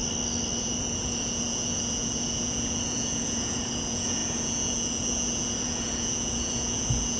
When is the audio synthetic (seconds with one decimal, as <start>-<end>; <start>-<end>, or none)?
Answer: 0.6-7.2

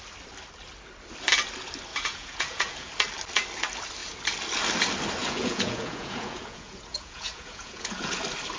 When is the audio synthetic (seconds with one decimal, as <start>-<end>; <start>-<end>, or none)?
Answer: 1.9-2.9; 5.2-8.2

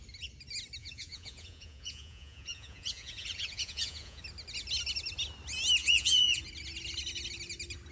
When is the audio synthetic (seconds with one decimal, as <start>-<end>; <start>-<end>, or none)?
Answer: 0.8-4.2; 5.8-6.4

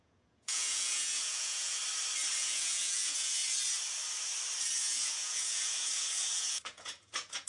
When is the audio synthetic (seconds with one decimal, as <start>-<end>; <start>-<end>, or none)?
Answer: 0.0-1.8; 2.4-3.4; 4.8-7.5

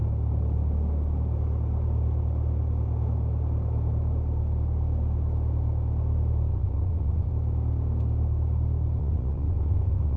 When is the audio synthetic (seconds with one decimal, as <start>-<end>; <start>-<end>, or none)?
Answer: 6.5-7.3; 9.0-10.2

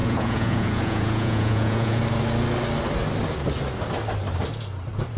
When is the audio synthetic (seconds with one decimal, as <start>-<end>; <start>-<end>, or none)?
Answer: 0.0-2.0